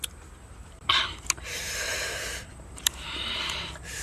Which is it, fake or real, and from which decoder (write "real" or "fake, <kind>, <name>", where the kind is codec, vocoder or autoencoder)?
fake, vocoder, BigVGAN v2